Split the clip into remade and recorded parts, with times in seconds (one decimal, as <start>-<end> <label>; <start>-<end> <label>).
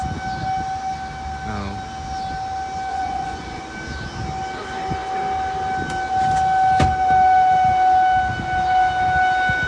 0.0-2.9 recorded; 2.9-3.6 remade; 3.6-9.7 recorded